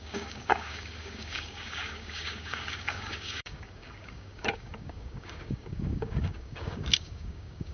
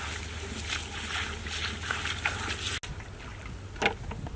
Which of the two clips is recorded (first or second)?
second